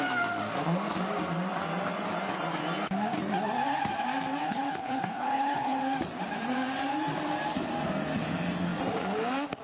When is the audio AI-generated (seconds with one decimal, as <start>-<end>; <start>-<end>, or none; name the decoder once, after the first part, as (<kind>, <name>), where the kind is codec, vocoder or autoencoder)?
4.4-5.8 (codec, HILCodec)